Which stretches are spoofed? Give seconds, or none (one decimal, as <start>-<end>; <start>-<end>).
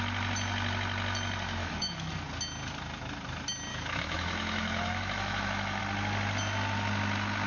1.6-2.1; 3.7-5.8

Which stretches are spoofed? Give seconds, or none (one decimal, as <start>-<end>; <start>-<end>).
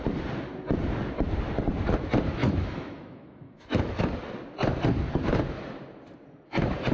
2.4-4.0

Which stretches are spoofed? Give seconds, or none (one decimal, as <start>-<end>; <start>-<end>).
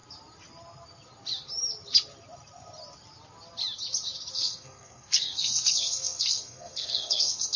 4.3-7.6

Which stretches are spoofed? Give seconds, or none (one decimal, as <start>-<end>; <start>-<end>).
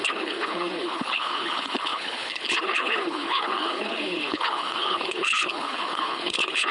0.0-6.7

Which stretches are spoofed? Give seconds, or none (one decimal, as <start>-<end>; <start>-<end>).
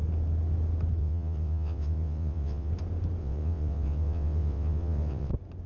1.0-2.7; 3.2-5.3